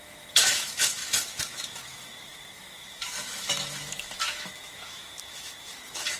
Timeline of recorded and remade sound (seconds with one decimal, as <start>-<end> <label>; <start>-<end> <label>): 0.0-6.2 remade